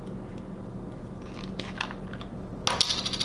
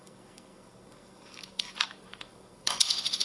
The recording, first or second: first